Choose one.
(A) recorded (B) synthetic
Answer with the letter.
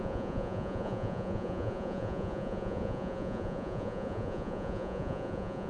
B